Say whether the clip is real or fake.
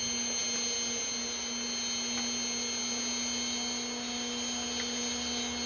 real